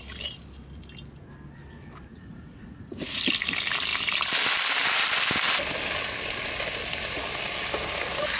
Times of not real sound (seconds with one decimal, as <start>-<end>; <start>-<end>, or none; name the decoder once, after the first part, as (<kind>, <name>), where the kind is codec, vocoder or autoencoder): 2.1-3.2 (vocoder, Vocos)